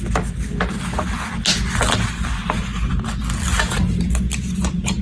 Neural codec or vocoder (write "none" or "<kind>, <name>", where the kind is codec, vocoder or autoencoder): none